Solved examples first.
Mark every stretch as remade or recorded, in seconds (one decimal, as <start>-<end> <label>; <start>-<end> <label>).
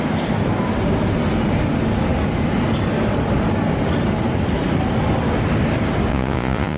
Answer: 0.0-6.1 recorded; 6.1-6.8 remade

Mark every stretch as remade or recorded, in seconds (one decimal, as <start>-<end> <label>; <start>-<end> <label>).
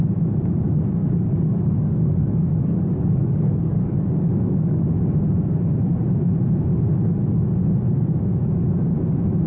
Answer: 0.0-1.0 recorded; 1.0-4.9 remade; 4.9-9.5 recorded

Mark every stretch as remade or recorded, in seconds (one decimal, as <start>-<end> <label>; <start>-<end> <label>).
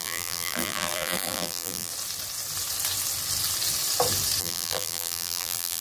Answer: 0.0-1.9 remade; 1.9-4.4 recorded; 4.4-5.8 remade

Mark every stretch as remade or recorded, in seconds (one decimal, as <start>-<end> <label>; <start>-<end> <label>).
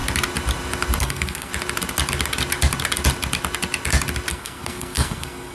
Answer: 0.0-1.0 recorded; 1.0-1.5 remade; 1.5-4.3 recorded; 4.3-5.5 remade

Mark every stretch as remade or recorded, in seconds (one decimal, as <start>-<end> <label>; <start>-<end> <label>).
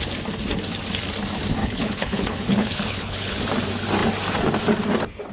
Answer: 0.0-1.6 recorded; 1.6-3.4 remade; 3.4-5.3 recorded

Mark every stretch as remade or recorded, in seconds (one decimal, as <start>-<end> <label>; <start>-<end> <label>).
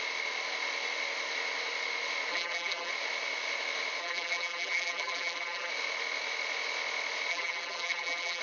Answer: 0.0-2.3 recorded; 2.3-2.9 remade; 2.9-4.0 recorded; 4.0-5.7 remade; 5.7-7.3 recorded; 7.3-8.4 remade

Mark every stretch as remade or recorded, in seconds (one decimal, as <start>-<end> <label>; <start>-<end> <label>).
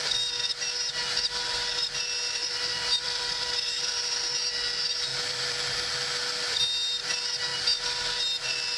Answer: 0.0-2.4 recorded; 2.4-3.9 remade; 3.9-5.1 recorded; 5.1-5.9 remade; 5.9-8.8 recorded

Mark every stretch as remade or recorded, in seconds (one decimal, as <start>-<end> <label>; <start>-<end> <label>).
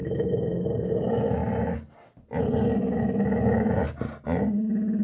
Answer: 0.0-5.0 recorded